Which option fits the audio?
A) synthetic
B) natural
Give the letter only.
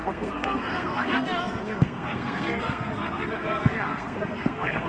A